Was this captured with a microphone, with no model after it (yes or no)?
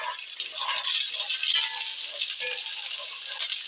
yes